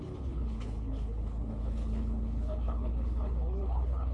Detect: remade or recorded remade